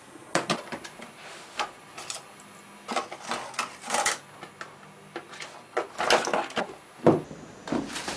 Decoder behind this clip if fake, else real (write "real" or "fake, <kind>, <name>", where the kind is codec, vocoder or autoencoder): real